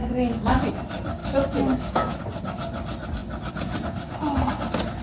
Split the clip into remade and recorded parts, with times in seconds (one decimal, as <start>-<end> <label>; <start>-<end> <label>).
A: 0.0-0.7 remade; 0.7-1.2 recorded; 1.2-2.2 remade; 2.2-5.0 recorded